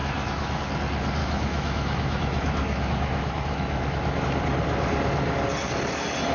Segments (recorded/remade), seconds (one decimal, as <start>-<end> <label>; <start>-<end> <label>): 0.0-0.6 remade; 0.6-1.2 recorded; 1.2-4.2 remade; 4.2-6.3 recorded